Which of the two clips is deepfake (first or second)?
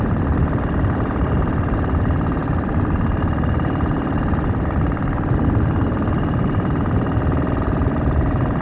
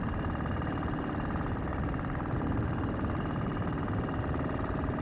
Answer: first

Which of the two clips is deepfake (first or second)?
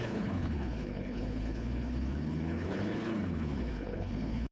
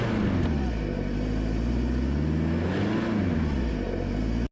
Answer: first